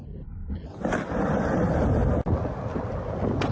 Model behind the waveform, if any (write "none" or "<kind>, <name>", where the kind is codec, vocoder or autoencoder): none